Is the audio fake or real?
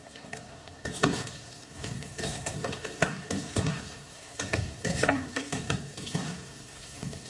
fake